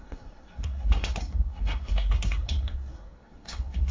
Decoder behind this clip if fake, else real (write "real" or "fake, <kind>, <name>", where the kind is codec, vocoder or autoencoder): fake, codec, SNAC